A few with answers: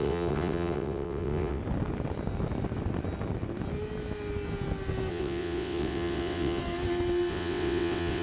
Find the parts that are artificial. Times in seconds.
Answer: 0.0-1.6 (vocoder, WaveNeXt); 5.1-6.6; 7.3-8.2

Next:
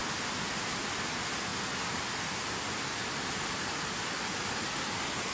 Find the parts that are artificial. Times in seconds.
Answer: none